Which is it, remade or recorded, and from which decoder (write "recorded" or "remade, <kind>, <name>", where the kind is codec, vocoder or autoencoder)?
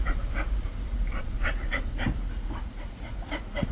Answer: remade, vocoder, Vocos